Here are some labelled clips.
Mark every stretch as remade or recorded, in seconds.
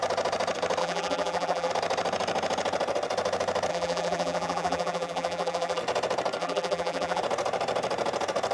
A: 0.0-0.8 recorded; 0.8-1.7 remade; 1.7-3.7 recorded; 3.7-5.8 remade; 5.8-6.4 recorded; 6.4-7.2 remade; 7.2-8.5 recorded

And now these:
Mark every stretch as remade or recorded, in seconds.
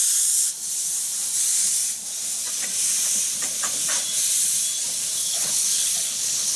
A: 0.0-5.2 recorded; 5.2-6.6 remade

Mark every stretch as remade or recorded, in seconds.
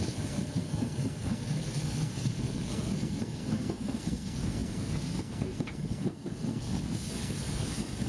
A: 0.0-8.1 remade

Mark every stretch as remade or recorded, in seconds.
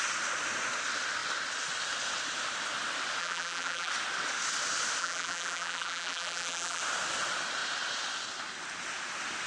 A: 0.0-3.2 recorded; 3.2-3.9 remade; 3.9-5.0 recorded; 5.0-6.8 remade; 6.8-9.5 recorded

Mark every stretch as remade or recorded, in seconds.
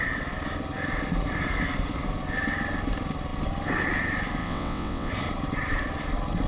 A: 0.0-4.4 recorded; 4.4-5.1 remade; 5.1-6.5 recorded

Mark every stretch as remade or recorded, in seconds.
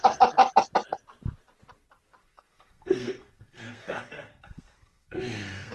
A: 0.0-2.2 recorded; 2.2-5.7 remade